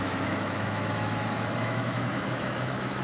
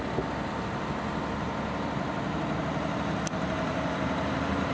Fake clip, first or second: first